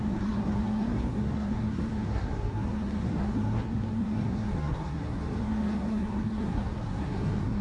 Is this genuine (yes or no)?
no